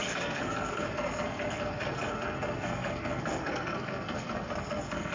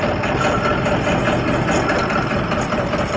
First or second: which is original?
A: second